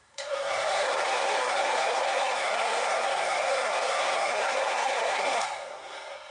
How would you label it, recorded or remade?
remade